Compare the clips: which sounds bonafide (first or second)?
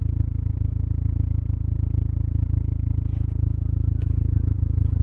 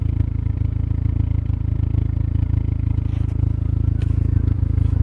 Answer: second